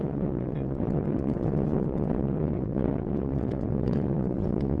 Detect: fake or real fake